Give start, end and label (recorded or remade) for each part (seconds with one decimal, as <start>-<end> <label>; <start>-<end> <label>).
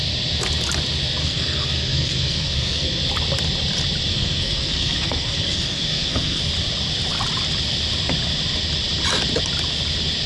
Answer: 0.0-1.2 recorded; 1.2-3.0 remade; 3.0-4.1 recorded; 4.1-6.4 remade; 6.4-10.3 recorded